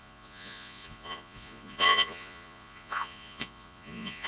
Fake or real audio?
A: fake